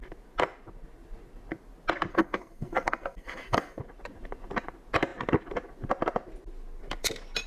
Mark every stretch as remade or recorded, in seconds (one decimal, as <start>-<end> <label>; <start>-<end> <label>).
0.0-2.1 recorded; 2.1-3.8 remade; 3.8-7.5 recorded